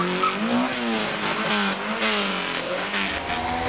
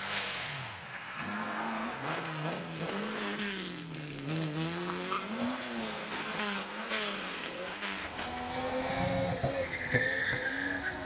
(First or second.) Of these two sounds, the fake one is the second